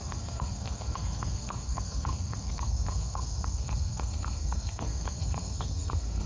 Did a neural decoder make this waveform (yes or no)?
yes